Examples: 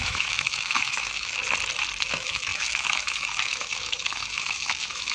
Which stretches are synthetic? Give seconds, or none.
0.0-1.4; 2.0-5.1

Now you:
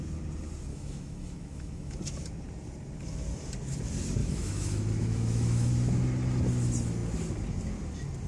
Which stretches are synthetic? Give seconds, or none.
0.7-2.0; 4.2-5.7

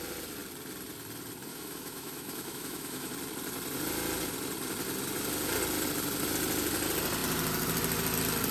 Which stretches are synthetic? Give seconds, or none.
1.5-3.1

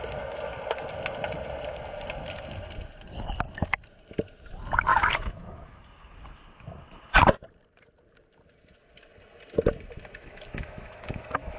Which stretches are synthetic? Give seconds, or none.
4.9-5.8; 10.2-11.6

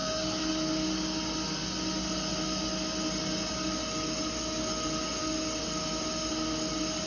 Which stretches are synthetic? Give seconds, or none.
0.0-0.5

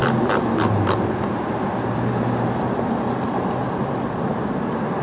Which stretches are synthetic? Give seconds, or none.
none

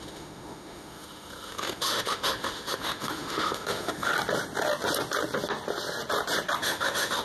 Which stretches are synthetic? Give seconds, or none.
0.0-4.1; 6.6-7.2